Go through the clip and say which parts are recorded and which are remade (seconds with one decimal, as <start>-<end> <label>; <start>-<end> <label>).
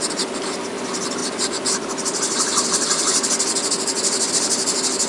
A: 0.0-5.1 recorded